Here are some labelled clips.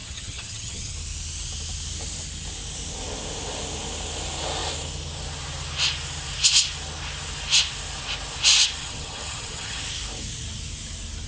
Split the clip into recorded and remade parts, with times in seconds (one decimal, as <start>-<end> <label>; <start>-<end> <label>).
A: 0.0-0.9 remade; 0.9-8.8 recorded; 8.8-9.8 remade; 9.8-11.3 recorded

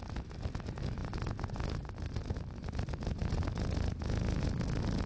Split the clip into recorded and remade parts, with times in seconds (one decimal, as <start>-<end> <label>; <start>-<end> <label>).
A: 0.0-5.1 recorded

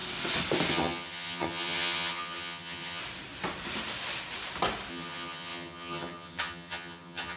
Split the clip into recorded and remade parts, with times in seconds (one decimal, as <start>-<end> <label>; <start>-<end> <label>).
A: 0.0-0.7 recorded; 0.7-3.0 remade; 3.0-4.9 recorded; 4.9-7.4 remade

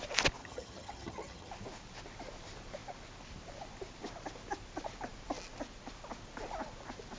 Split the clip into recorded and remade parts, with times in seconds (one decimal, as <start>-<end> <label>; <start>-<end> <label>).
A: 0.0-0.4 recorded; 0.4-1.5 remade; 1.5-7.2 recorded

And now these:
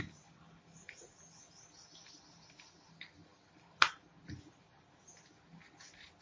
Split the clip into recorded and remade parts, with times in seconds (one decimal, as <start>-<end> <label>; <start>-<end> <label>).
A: 0.0-6.2 recorded

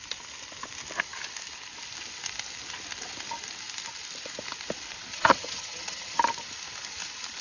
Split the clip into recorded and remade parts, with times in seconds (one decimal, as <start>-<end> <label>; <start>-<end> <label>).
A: 0.0-5.1 recorded; 5.1-6.2 remade; 6.2-7.4 recorded

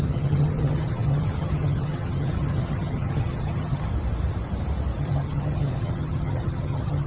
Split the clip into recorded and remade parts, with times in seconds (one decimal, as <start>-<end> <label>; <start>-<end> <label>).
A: 0.0-3.9 remade; 3.9-5.0 recorded; 5.0-7.1 remade